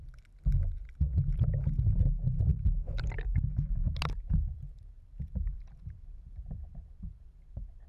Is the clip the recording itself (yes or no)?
no